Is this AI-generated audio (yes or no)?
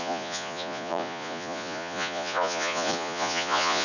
yes